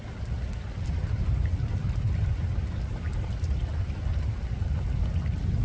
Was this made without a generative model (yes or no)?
yes